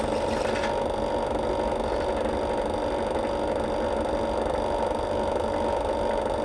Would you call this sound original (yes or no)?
yes